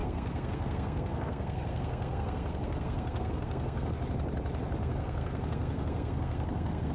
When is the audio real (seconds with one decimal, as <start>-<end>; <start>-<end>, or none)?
3.9-4.8